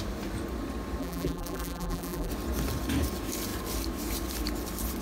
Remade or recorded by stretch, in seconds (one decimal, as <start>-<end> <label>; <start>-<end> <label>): 0.0-1.0 recorded; 1.0-2.3 remade; 2.3-5.0 recorded